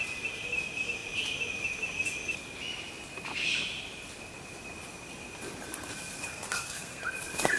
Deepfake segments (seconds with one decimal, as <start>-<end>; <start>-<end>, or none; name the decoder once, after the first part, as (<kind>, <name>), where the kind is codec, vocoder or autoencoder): 6.3-7.0 (codec, SNAC)